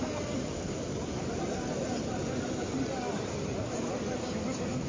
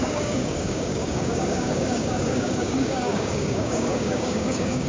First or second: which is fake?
second